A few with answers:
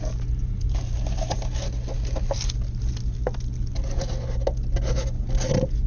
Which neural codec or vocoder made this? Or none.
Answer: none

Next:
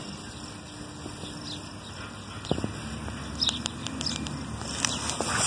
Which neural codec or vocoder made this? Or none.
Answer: none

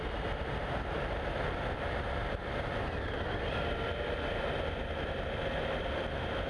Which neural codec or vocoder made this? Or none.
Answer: none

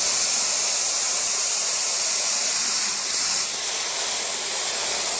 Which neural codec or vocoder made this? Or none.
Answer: none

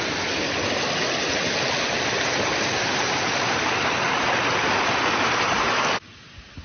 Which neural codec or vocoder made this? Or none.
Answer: none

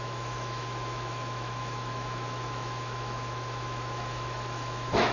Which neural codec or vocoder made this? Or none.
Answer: autoencoder, DAC-VAE